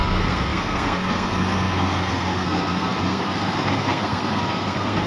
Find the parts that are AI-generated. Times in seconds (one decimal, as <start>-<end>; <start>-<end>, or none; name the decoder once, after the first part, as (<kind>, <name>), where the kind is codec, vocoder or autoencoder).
0.0-5.1 (codec, SNAC)

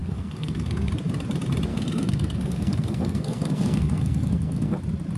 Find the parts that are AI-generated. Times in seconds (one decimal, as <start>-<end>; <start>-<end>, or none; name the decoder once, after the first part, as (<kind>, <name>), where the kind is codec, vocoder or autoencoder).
0.0-0.9 (codec, SNAC); 1.7-4.8

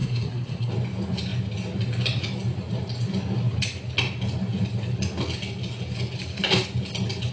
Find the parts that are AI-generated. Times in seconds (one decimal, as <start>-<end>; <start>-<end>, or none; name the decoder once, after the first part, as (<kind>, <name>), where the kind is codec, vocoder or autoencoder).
0.0-0.7 (codec, SNAC)

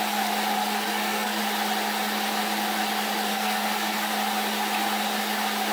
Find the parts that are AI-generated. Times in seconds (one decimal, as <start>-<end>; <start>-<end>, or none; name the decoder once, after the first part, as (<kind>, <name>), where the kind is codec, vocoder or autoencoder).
0.6-1.4 (codec, SNAC); 3.3-4.1